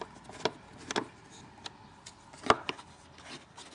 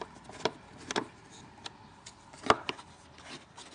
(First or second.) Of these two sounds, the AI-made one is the second